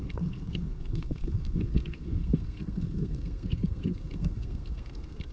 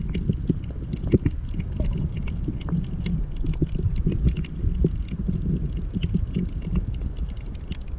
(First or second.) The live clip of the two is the second